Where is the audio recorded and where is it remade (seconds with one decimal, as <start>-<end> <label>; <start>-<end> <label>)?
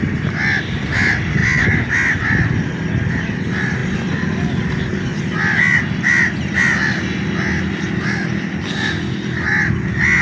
0.0-10.2 recorded